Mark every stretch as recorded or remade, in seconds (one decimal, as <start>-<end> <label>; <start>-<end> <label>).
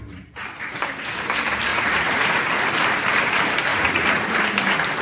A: 0.0-1.7 recorded; 1.7-2.6 remade; 2.6-3.7 recorded; 3.7-4.4 remade; 4.4-5.0 recorded